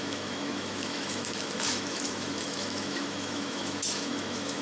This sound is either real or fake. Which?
fake